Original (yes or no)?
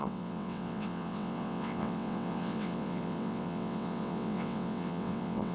no